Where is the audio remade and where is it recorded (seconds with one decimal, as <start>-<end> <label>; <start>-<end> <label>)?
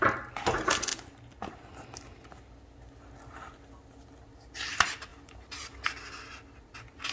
0.0-5.1 recorded; 5.1-5.6 remade; 5.6-7.1 recorded